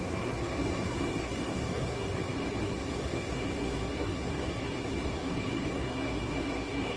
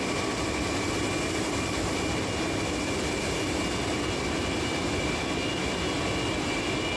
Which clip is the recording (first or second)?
second